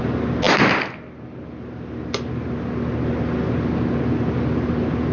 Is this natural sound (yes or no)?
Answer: yes